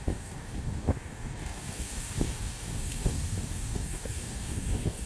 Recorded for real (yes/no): no